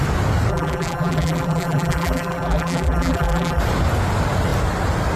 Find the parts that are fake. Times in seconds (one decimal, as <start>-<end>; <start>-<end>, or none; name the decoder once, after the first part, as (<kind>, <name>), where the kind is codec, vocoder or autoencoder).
0.5-3.6 (vocoder, BigVGAN v2)